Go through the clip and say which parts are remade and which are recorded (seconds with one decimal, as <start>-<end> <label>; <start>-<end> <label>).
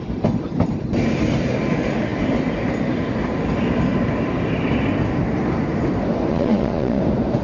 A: 0.0-6.3 recorded; 6.3-7.0 remade; 7.0-7.4 recorded